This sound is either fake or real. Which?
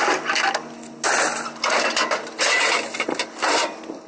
real